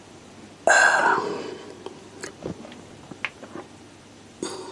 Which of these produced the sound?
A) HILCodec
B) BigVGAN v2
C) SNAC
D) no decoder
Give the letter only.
D